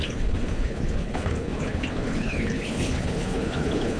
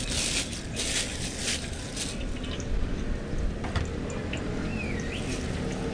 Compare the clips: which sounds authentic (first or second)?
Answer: second